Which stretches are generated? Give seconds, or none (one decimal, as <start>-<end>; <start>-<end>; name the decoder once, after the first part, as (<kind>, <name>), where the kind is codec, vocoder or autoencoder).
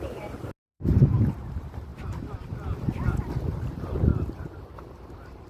0.0-1.9 (vocoder, BigVGAN v2); 3.1-5.5